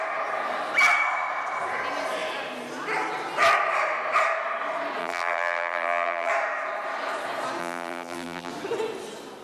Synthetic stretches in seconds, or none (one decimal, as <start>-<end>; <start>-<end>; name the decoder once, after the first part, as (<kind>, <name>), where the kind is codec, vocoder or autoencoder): 5.0-6.3 (vocoder, BigVGAN v2); 7.6-8.5